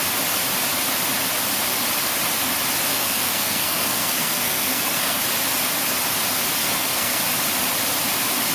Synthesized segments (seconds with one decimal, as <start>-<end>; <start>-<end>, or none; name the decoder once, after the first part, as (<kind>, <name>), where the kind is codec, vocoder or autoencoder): 2.9-5.2 (codec, SNAC); 6.6-7.2